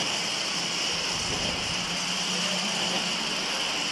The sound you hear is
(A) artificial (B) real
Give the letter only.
B